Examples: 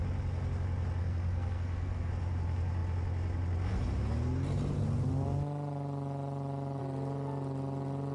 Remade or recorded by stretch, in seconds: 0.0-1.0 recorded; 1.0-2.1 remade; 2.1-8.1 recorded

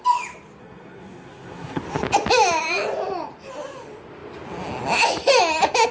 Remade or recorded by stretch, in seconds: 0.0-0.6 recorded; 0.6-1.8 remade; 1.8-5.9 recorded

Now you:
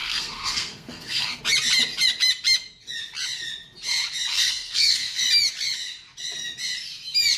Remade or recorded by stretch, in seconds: 0.0-1.4 remade; 1.4-4.3 recorded; 4.3-5.2 remade; 5.2-7.4 recorded

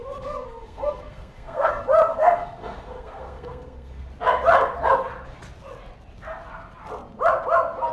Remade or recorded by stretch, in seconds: 0.0-1.7 remade; 1.7-2.1 recorded; 2.1-4.1 remade; 4.1-7.9 recorded

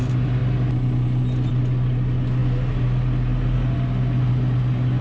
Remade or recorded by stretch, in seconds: 0.0-5.0 recorded

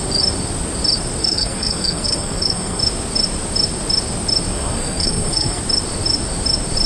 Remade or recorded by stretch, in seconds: 0.0-1.2 recorded; 1.2-2.8 remade; 2.8-4.5 recorded; 4.5-5.6 remade; 5.6-6.9 recorded

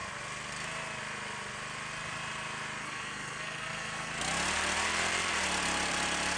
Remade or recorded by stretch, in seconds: 0.0-2.8 recorded; 2.8-4.1 remade; 4.1-6.4 recorded